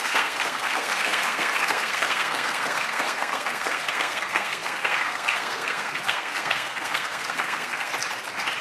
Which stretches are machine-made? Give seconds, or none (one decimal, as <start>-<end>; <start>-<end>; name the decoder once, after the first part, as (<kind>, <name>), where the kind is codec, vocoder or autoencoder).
0.0-7.9 (codec, SNAC)